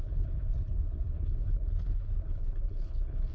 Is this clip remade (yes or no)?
yes